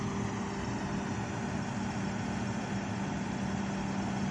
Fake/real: real